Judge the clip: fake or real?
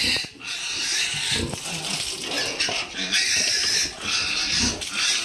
real